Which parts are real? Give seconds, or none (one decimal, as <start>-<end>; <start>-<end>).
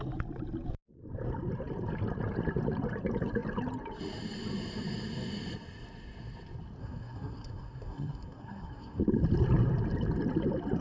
0.0-6.8; 9.0-10.8